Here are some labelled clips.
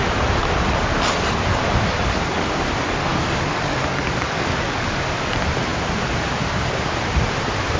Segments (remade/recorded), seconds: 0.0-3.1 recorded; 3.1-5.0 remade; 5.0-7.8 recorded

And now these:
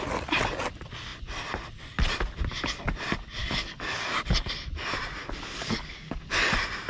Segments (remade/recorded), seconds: 0.0-3.4 recorded; 3.4-4.0 remade; 4.0-5.2 recorded; 5.2-6.3 remade; 6.3-6.9 recorded